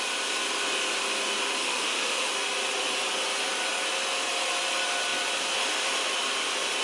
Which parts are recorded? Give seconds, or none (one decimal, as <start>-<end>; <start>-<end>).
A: 0.0-1.6; 2.3-6.8